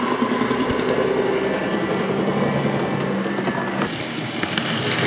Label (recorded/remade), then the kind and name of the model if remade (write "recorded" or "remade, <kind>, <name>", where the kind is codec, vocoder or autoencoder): recorded